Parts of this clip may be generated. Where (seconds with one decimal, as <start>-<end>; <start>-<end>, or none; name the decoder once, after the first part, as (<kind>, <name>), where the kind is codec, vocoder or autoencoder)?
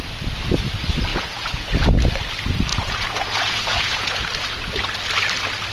1.1-1.7 (vocoder, Vocos); 2.7-4.2